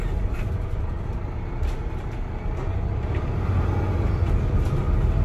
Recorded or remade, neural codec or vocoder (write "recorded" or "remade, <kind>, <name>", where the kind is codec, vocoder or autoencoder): recorded